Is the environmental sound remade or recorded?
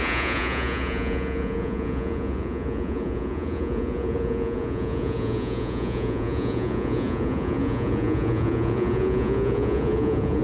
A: remade